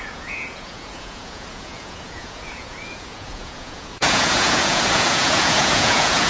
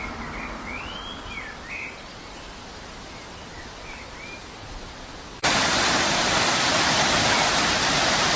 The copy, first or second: first